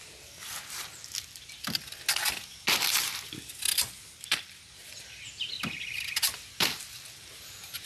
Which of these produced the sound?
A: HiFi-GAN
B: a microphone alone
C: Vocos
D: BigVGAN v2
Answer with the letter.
B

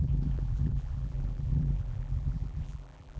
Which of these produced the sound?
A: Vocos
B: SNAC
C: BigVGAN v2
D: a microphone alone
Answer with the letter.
C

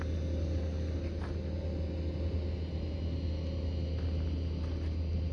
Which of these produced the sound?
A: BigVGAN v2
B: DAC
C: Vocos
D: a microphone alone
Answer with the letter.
D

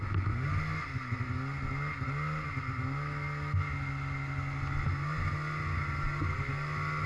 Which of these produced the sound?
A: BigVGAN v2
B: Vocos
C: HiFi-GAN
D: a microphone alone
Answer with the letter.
D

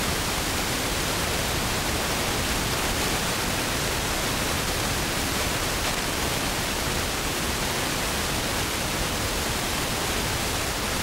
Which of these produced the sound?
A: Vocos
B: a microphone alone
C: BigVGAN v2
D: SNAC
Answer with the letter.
B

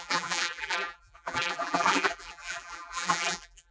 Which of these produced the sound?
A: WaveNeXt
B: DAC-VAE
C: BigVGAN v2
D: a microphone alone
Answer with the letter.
C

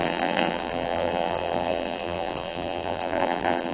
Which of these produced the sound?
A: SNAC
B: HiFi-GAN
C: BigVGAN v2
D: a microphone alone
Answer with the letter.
C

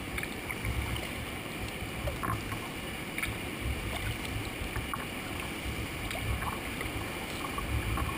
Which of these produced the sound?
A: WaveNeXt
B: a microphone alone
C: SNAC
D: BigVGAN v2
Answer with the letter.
B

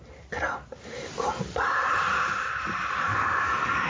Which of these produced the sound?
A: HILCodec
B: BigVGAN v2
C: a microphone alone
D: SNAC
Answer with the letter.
C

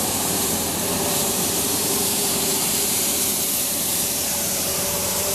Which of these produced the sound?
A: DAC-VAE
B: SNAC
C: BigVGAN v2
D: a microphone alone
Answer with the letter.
C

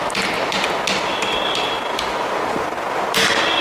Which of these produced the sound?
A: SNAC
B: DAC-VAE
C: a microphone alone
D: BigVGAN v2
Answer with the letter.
C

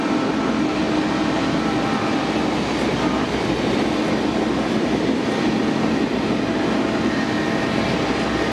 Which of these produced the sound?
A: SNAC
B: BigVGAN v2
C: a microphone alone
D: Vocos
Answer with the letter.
C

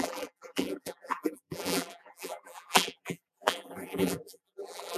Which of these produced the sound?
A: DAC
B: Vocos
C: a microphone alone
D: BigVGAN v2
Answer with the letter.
D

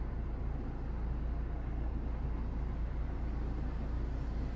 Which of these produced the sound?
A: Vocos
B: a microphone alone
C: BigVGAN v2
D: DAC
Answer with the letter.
B